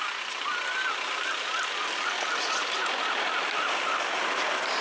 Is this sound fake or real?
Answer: real